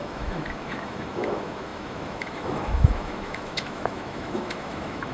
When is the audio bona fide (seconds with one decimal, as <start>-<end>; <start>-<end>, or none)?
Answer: none

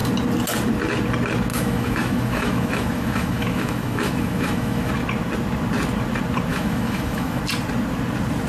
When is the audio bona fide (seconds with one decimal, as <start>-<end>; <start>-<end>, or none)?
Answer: 0.0-1.5; 4.9-6.5; 7.4-8.5

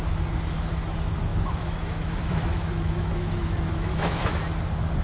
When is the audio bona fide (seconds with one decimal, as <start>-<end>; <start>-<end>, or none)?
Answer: 0.0-1.3; 4.3-5.0

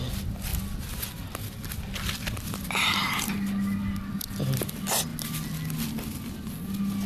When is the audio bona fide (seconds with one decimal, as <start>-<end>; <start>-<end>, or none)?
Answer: 0.0-7.1

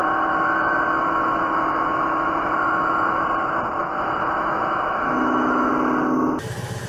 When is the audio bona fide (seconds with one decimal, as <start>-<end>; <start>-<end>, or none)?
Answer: 3.2-3.8; 5.7-6.9

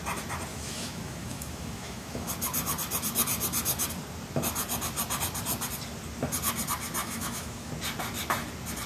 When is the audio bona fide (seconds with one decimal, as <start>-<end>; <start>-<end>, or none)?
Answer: 0.0-0.5; 2.3-7.0; 7.7-8.9

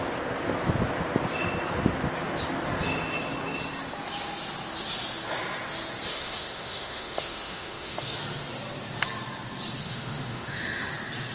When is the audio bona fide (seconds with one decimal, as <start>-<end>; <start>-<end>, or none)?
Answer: 0.0-6.1; 8.2-9.8; 10.9-11.3

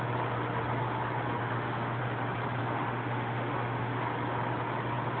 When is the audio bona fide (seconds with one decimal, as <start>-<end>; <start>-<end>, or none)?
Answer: 0.0-1.4; 2.0-2.6; 4.0-5.2